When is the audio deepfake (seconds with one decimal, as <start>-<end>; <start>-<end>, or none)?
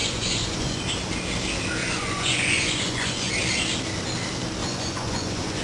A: 0.0-0.8; 1.8-3.3; 4.6-5.6